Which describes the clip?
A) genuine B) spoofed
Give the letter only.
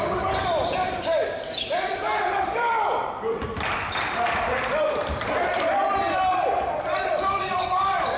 B